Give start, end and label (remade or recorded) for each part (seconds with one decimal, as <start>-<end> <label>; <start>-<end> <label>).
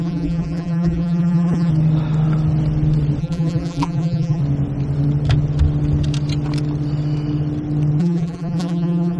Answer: 0.0-1.7 remade; 1.7-3.2 recorded; 3.2-4.4 remade; 4.4-8.0 recorded; 8.0-9.2 remade